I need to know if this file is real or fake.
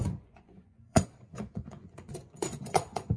fake